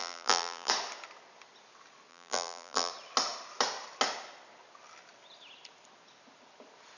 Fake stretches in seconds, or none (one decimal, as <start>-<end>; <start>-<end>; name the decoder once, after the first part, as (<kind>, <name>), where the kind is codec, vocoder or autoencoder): 0.0-0.7 (vocoder, BigVGAN v2); 2.1-2.9

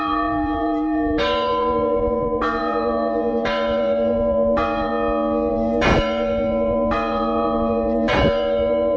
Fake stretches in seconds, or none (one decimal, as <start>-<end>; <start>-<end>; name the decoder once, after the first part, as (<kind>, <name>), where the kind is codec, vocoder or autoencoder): 0.0-4.9 (vocoder, BigVGAN v2); 5.5-9.0